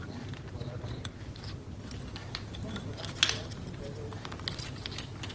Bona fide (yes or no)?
yes